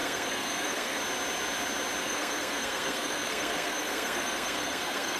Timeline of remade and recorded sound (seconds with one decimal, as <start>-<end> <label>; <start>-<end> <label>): 0.0-1.0 remade; 1.0-2.0 recorded; 2.0-5.2 remade